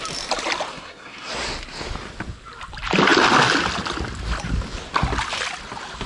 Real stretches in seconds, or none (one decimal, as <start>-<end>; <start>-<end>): 0.0-0.7; 1.3-6.1